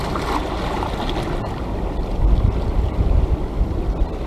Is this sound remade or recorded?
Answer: recorded